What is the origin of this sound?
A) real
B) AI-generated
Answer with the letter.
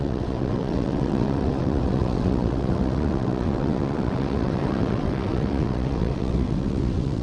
B